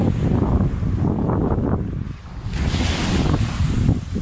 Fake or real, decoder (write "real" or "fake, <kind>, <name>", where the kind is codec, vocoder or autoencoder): real